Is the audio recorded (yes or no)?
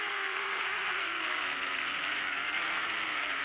no